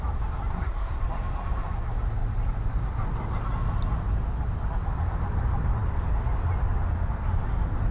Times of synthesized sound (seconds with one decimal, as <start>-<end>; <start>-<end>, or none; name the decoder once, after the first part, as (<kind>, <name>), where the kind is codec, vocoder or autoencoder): 0.5-1.0 (codec, SNAC)